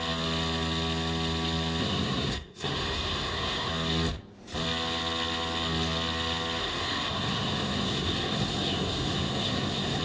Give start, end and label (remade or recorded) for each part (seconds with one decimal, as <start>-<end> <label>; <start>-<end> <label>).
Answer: 0.0-1.8 recorded; 1.8-3.7 remade; 3.7-6.6 recorded; 6.6-10.0 remade